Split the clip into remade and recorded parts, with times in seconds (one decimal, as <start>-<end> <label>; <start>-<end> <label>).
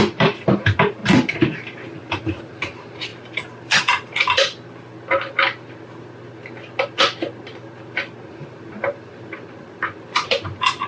0.0-3.1 remade; 3.1-8.3 recorded; 8.3-10.9 remade